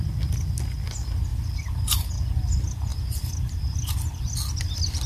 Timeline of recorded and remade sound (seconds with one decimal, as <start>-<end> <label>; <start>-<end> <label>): 0.0-1.3 recorded; 1.3-2.1 remade; 2.1-2.9 recorded; 2.9-4.3 remade; 4.3-5.1 recorded